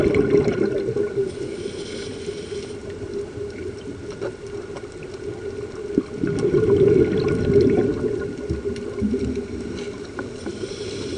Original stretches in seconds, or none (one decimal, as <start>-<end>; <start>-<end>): 0.0-2.8; 4.4-10.5